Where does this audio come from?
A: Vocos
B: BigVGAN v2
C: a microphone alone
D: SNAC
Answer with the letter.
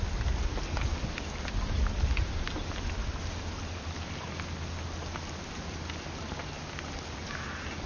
C